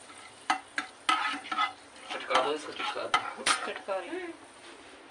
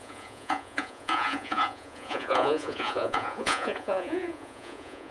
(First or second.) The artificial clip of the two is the second